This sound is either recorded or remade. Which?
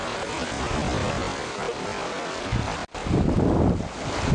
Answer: recorded